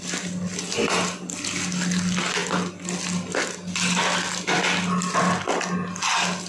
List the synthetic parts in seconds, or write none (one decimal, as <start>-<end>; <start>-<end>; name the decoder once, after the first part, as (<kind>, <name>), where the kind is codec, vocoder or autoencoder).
none